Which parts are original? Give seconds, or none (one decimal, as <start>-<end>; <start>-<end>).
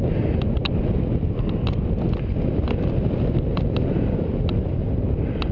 0.0-5.5